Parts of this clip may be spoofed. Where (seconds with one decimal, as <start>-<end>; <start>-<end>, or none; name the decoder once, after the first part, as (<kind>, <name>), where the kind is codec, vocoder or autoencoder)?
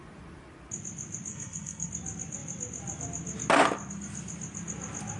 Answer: 1.3-1.9 (codec, SNAC)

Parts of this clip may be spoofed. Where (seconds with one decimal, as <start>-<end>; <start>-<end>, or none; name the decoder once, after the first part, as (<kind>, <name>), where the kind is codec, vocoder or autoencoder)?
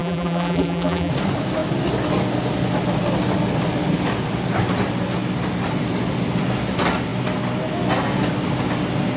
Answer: 0.0-1.1 (vocoder, BigVGAN v2)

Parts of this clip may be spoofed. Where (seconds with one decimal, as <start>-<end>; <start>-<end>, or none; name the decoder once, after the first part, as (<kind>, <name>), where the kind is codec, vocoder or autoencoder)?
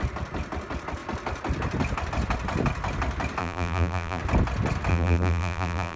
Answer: 3.4-4.2 (vocoder, BigVGAN v2); 4.9-6.0